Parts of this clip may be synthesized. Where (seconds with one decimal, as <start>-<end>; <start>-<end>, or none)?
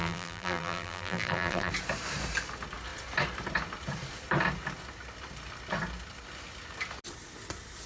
0.0-1.7